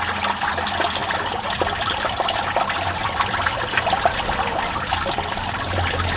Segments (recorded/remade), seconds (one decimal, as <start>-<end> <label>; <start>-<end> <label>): 0.0-1.0 recorded; 1.0-4.7 remade; 4.7-6.2 recorded